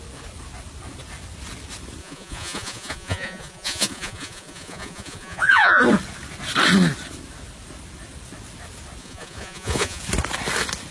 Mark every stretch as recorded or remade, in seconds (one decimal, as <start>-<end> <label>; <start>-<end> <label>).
0.0-2.0 recorded; 2.0-5.8 remade; 5.8-9.0 recorded; 9.0-10.0 remade; 10.0-10.9 recorded